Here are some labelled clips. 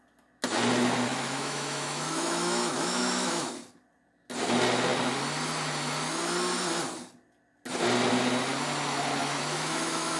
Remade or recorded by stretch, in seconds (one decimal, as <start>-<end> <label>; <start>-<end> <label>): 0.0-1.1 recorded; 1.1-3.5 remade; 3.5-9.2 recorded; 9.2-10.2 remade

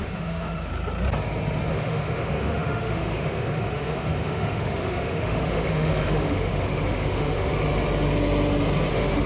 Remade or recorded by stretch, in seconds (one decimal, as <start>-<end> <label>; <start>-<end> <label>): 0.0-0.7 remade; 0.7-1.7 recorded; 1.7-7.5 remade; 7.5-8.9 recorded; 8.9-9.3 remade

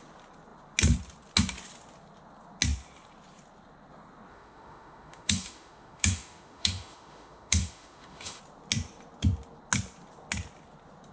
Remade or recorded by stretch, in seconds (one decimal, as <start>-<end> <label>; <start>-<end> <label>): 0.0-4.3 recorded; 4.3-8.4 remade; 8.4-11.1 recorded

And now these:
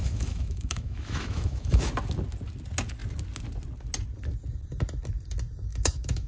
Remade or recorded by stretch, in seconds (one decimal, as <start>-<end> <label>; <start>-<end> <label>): 0.0-1.9 remade; 1.9-5.7 recorded; 5.7-6.3 remade